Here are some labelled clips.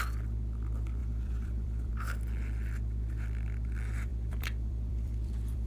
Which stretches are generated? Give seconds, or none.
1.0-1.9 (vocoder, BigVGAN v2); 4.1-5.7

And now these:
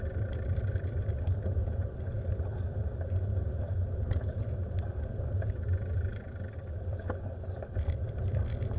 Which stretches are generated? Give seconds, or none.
0.0-8.8 (vocoder, BigVGAN v2)

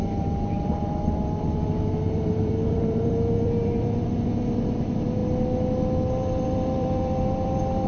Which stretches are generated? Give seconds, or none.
0.0-5.2 (vocoder, BigVGAN v2); 6.1-7.9

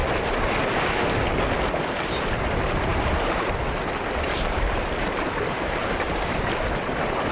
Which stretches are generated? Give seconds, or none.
2.9-3.6 (vocoder, BigVGAN v2); 5.8-6.4

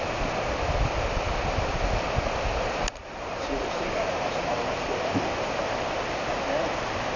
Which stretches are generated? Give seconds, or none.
3.0-5.6 (vocoder, BigVGAN v2)

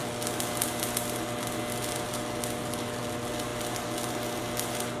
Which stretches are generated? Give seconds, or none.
none

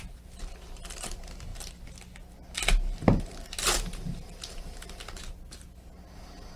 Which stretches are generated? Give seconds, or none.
none

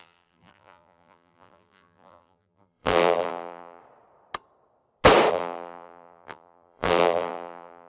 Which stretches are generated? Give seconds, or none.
0.0-3.8 (vocoder, BigVGAN v2); 5.3-7.9